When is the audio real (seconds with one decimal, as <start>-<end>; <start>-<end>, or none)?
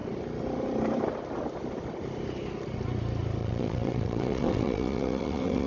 0.0-3.4